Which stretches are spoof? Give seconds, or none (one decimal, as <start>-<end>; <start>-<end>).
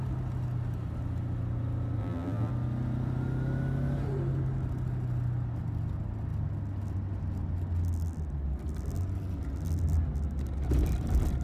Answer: 2.0-2.5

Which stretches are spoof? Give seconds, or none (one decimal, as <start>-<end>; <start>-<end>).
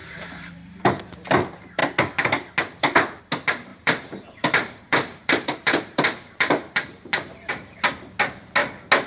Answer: 0.0-0.9; 3.7-7.5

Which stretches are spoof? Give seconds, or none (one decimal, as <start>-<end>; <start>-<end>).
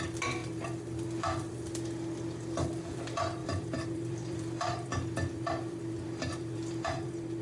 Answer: 0.4-1.5; 3.4-7.4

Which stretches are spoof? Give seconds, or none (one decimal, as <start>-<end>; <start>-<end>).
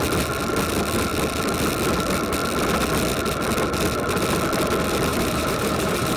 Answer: 5.1-6.2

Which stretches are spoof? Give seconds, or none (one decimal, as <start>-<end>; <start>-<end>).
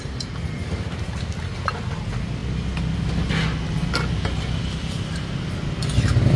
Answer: 0.0-2.4; 4.6-6.4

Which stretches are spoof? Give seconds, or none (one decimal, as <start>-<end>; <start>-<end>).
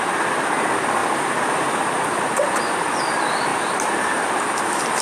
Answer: 1.0-3.0; 3.5-4.6